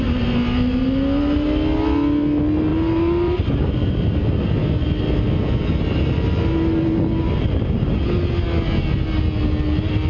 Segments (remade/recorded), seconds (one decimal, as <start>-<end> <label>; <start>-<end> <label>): 0.0-2.7 recorded; 2.7-4.6 remade; 4.6-10.1 recorded